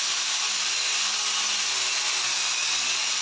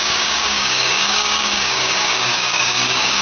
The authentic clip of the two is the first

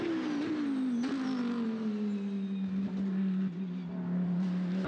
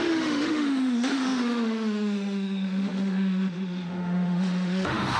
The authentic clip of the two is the first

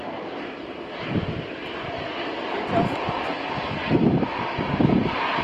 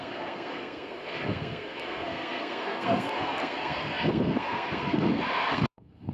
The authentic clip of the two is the first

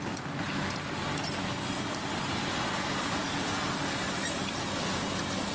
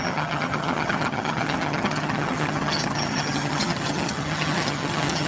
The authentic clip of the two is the first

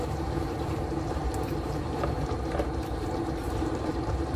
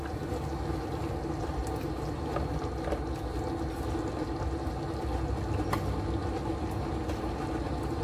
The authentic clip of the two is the second